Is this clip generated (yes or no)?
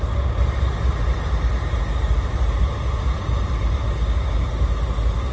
no